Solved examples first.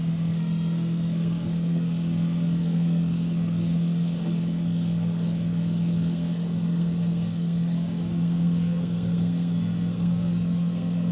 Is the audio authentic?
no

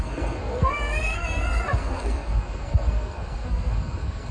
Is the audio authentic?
no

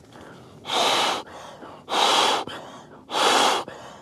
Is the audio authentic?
yes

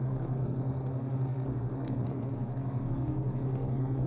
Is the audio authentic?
no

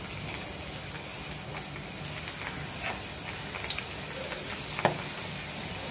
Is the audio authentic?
yes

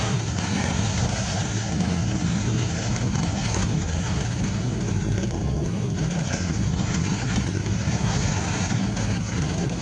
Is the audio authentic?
no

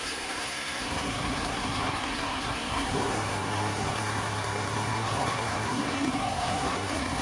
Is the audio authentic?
no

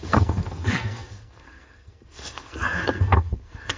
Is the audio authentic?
no